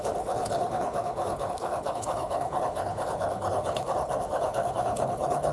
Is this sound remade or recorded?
remade